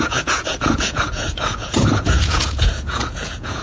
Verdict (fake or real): fake